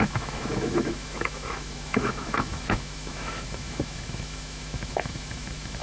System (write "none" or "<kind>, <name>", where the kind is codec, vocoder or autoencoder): autoencoder, DAC-VAE